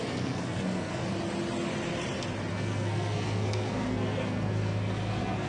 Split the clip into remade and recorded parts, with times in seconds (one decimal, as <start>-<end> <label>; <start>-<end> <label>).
0.0-1.0 remade; 1.0-2.5 recorded; 2.5-5.5 remade